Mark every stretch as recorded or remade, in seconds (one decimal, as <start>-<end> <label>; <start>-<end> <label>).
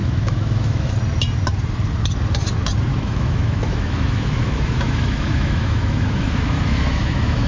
0.0-0.9 remade; 0.9-2.9 recorded; 2.9-7.5 remade